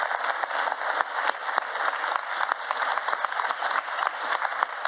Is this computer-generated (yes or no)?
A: no